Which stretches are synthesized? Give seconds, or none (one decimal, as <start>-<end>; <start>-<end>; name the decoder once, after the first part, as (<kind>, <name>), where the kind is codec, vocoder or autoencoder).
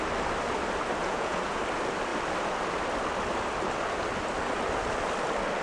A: 1.0-1.6 (vocoder, Vocos)